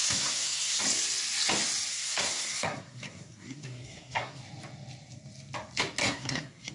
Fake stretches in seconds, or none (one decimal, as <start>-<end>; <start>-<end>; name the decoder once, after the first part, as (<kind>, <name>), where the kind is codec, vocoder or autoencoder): 0.0-0.8 (codec, SNAC); 1.9-4.4; 6.0-6.7